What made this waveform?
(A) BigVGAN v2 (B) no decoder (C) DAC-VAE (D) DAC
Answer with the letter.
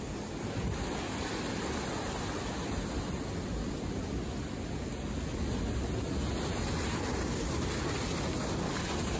B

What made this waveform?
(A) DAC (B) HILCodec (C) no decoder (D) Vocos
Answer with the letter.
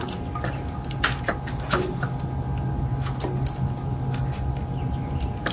C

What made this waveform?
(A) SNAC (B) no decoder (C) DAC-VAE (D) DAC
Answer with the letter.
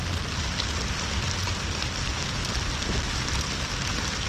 B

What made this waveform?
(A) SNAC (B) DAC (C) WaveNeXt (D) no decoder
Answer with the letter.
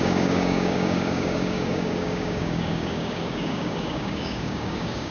B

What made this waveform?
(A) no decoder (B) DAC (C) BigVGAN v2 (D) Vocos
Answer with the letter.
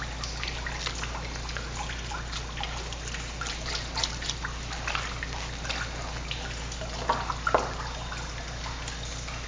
A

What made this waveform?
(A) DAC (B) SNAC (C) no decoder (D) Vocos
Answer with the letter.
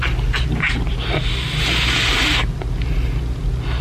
C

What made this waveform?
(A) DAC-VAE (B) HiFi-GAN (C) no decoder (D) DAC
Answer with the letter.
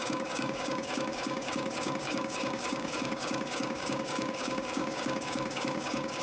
D